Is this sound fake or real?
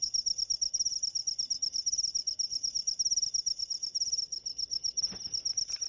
real